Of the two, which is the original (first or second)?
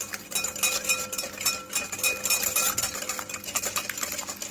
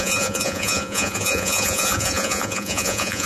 first